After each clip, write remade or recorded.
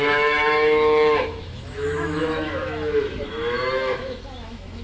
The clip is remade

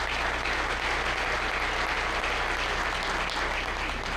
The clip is recorded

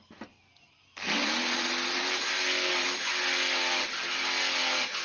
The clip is recorded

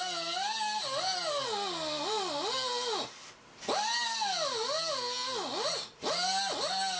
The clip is recorded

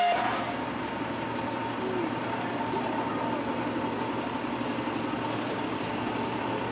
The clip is recorded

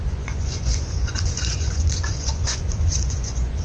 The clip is remade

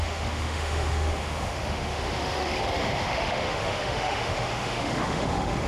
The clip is remade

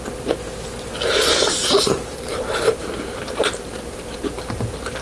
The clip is remade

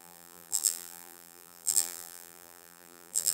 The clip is remade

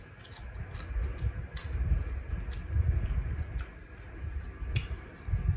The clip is recorded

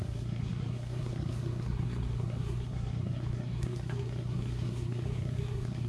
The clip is remade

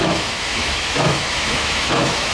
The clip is remade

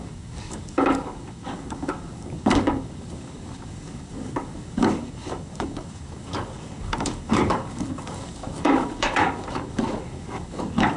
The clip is remade